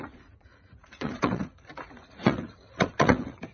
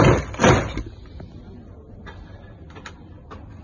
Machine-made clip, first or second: first